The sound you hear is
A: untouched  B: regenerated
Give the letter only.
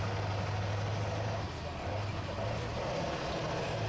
A